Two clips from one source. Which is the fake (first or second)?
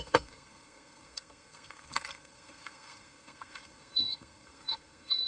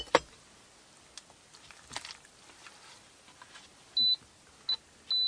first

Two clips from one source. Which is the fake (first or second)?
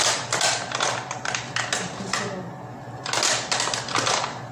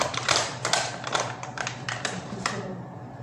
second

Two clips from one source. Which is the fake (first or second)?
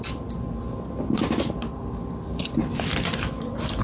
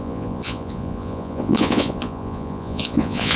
second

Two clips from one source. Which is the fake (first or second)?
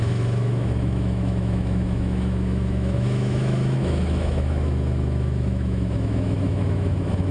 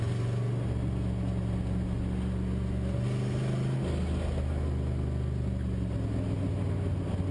first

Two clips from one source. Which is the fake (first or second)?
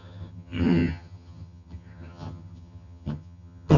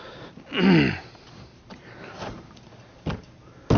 first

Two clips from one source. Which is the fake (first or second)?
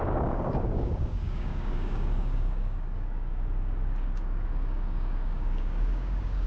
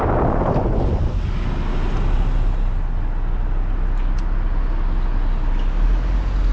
first